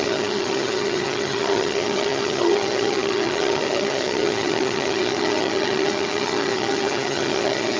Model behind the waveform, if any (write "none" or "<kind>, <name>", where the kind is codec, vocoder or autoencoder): vocoder, HiFi-GAN